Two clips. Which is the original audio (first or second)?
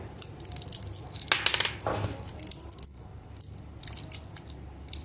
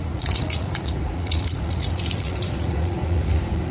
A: first